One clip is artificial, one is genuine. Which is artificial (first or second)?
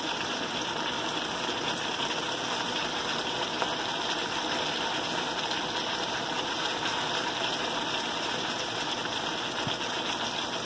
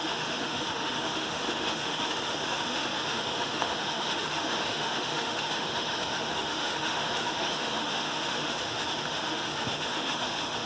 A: second